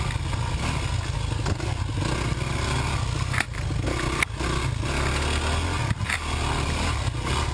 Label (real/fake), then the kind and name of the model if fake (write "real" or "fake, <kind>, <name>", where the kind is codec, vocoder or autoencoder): real